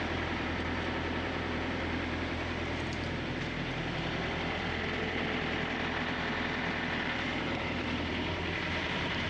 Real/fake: fake